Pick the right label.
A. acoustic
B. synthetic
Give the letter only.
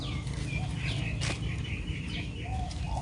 A